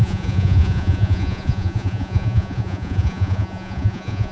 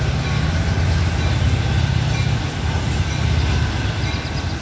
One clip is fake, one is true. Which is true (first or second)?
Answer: second